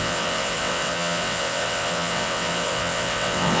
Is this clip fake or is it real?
fake